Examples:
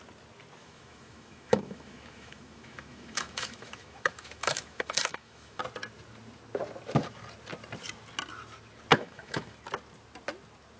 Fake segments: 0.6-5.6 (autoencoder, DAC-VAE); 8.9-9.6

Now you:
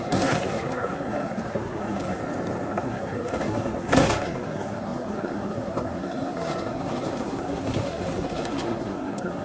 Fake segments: 0.0-2.2 (codec, SNAC); 2.7-9.4

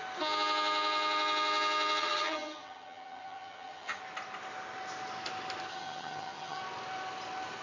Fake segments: 2.0-4.0 (vocoder, HiFi-GAN); 5.7-6.6

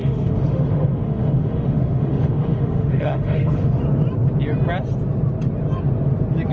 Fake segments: 0.0-3.8 (autoencoder, DAC-VAE)

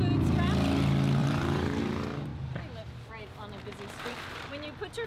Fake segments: 1.2-1.8 (vocoder, BigVGAN v2)

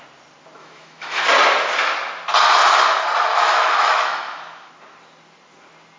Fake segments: 0.6-1.2 (autoencoder, DAC-VAE); 3.3-4.7